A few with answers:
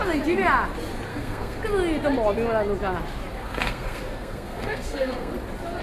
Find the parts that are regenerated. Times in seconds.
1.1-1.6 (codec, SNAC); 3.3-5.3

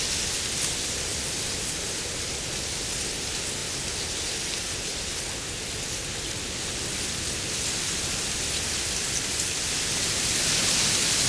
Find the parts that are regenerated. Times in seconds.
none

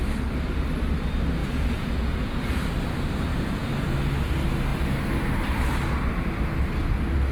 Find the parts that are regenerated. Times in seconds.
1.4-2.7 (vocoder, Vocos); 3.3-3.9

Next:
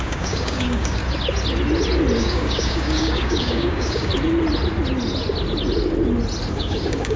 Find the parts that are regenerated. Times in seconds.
0.0-1.0 (codec, DAC); 2.2-4.1; 6.5-7.2